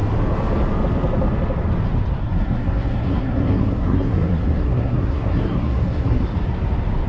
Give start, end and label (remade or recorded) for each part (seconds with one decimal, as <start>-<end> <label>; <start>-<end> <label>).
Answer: 0.0-2.2 recorded; 2.2-6.2 remade; 6.2-7.1 recorded